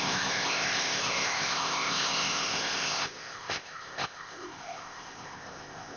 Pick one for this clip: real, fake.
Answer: fake